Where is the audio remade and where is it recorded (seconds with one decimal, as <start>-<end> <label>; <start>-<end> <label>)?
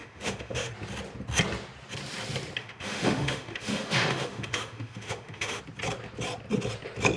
0.0-0.7 remade; 0.7-2.6 recorded; 2.6-5.6 remade; 5.6-7.2 recorded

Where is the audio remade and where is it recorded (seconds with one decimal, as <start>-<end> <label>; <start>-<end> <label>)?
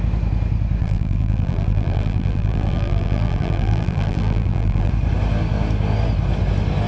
0.0-0.8 recorded; 0.8-4.9 remade; 4.9-6.9 recorded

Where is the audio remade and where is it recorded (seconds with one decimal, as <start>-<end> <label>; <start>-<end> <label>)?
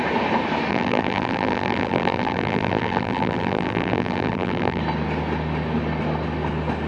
0.0-0.7 recorded; 0.7-4.8 remade; 4.8-6.9 recorded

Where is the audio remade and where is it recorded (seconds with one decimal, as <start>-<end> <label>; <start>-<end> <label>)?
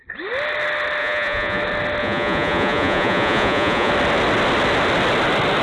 0.0-1.0 recorded; 1.0-1.6 remade; 1.6-2.0 recorded; 2.0-3.9 remade; 3.9-5.6 recorded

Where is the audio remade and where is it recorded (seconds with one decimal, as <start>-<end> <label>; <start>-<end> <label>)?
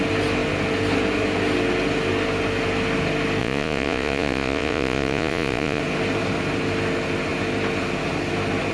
0.0-3.4 recorded; 3.4-5.8 remade; 5.8-8.7 recorded